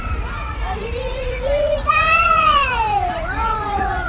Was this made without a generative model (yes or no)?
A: no